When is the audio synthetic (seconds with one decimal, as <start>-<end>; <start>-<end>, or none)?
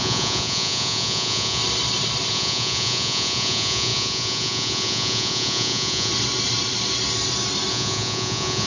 0.0-1.6; 2.3-6.1; 7.7-8.7